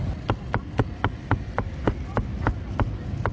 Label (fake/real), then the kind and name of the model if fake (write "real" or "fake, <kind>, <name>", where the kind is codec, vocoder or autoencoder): real